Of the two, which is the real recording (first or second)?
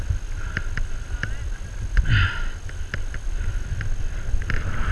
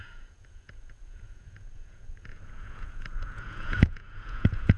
first